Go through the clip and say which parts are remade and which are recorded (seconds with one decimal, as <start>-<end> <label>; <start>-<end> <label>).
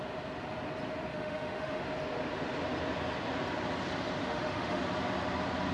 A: 0.0-1.1 recorded; 1.1-1.8 remade; 1.8-4.2 recorded; 4.2-4.8 remade; 4.8-5.7 recorded